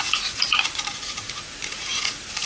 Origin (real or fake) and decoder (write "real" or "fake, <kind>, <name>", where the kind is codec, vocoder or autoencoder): fake, vocoder, Vocos